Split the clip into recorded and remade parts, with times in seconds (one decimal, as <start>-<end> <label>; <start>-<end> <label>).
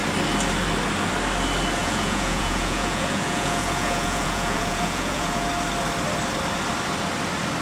0.0-1.8 recorded; 1.8-5.5 remade; 5.5-7.6 recorded